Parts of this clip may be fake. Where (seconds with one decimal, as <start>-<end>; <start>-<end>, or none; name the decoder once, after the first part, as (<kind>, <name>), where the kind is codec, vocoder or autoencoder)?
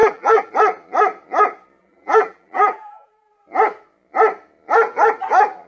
0.0-0.5 (vocoder, BigVGAN v2); 1.8-3.3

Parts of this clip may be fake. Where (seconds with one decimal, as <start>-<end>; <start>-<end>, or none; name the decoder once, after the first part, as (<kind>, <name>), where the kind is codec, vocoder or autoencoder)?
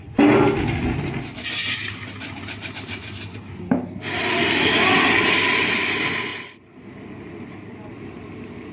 1.6-4.2 (vocoder, BigVGAN v2)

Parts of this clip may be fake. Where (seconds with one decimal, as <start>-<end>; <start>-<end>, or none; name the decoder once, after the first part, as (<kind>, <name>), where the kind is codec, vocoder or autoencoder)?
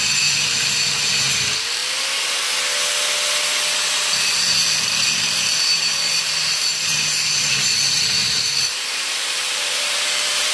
0.0-1.8 (vocoder, BigVGAN v2); 5.7-10.5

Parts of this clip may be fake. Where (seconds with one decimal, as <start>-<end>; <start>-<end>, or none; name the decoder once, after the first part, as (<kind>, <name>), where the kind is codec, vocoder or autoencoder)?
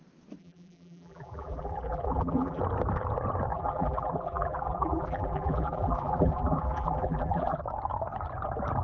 0.4-2.6 (vocoder, BigVGAN v2); 3.5-7.6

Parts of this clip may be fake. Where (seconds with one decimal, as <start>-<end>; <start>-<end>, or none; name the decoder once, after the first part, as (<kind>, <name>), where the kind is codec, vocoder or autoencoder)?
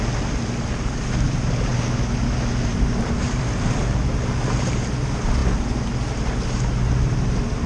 2.7-3.8 (vocoder, BigVGAN v2)